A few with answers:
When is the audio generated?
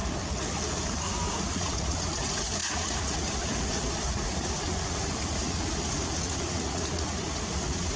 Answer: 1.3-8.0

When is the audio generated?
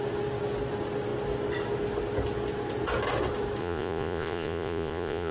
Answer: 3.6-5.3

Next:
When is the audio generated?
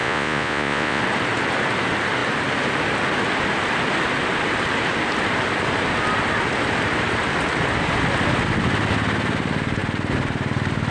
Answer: 0.0-1.0